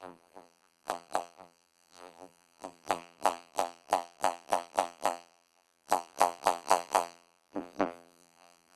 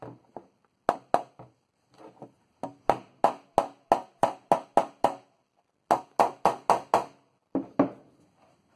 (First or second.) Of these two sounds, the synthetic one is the first